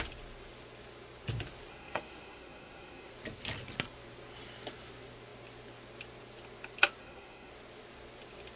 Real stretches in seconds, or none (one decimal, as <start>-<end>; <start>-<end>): 0.0-1.7; 3.1-7.0; 7.5-8.6